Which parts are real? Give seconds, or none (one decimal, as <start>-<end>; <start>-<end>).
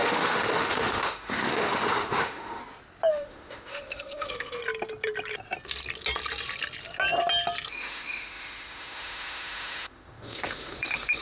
2.6-3.1; 4.6-7.7